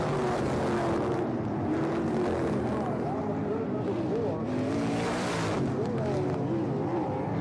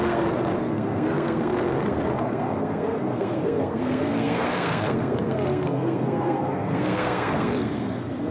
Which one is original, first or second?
first